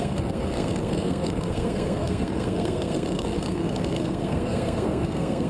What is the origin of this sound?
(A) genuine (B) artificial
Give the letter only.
B